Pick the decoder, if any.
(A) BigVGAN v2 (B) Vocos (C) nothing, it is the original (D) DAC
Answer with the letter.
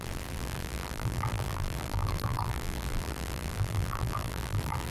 A